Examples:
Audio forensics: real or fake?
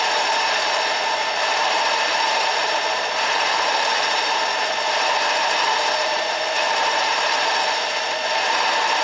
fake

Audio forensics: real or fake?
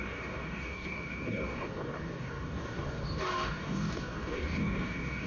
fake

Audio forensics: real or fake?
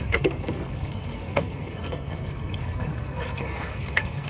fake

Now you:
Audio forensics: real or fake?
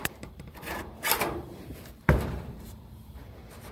fake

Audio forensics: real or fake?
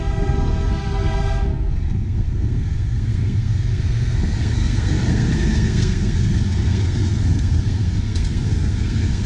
fake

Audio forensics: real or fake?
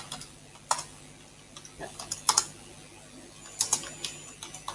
real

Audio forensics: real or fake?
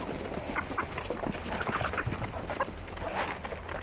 real